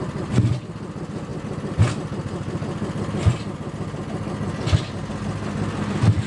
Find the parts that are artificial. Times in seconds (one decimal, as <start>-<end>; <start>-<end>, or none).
none